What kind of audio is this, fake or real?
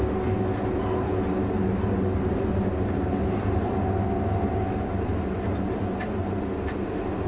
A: real